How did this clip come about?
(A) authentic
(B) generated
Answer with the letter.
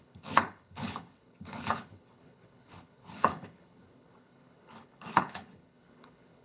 B